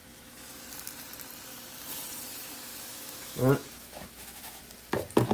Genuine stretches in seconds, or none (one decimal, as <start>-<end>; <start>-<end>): 0.5-2.7; 4.6-5.3